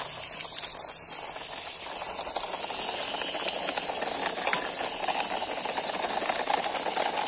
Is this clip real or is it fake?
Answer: real